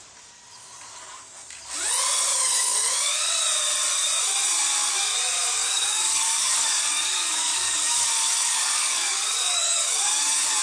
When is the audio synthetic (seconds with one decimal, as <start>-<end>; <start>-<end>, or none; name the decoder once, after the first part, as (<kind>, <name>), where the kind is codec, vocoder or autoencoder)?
2.3-3.3 (codec, DAC); 5.6-10.6